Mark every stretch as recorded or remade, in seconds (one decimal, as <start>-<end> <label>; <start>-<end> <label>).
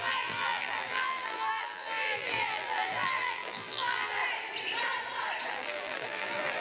0.0-4.2 remade; 4.2-5.5 recorded; 5.5-6.6 remade